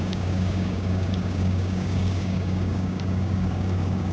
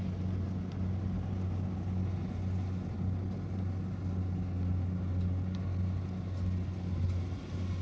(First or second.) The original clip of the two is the second